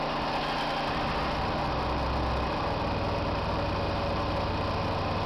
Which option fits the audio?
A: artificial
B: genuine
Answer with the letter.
B